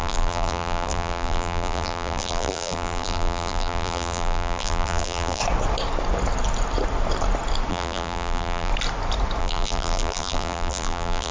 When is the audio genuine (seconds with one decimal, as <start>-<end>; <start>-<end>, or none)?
5.4-7.7; 8.7-9.4